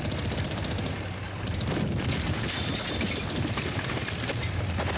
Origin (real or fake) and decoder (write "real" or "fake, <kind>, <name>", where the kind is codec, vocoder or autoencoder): fake, vocoder, BigVGAN v2